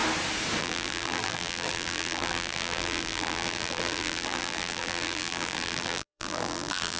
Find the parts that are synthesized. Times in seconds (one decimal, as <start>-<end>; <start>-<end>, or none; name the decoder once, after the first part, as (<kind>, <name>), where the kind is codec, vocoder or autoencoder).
0.6-7.0 (vocoder, BigVGAN v2)